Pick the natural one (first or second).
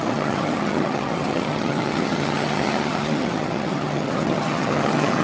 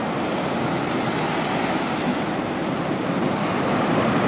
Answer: second